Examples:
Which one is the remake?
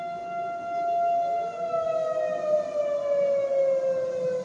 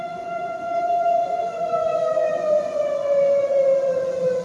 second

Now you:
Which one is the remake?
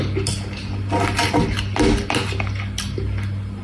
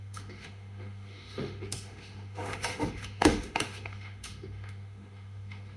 second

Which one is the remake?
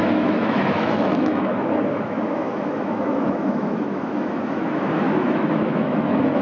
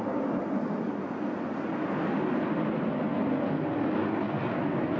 first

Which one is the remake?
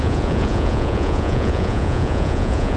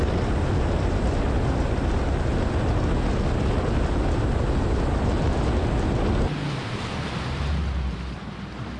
first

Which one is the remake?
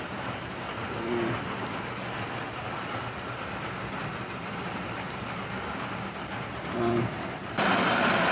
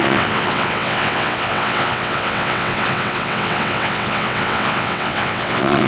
second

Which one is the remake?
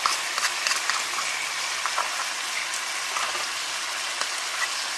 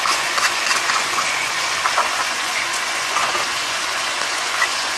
second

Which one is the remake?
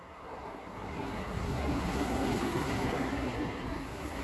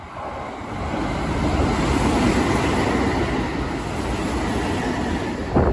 first